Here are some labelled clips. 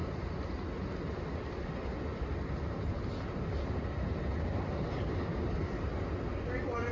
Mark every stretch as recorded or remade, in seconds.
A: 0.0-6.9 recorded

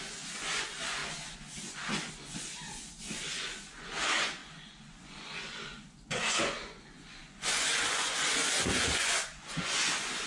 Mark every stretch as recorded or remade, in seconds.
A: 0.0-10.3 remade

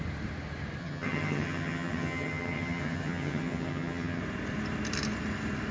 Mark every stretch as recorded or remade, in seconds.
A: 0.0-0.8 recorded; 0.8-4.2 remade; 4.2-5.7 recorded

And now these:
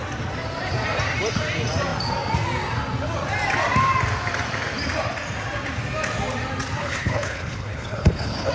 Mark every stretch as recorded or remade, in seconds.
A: 0.0-6.8 recorded; 6.8-8.5 remade

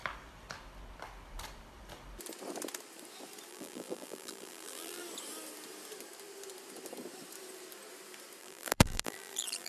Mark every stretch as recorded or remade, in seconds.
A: 0.0-3.5 recorded; 3.5-5.0 remade; 5.0-8.4 recorded; 8.4-9.7 remade